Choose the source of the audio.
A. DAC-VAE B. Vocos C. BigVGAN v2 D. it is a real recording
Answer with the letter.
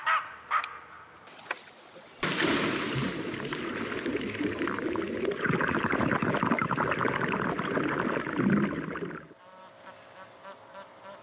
D